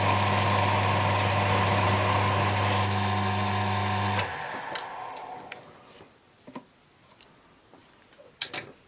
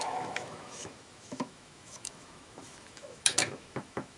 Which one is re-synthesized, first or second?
second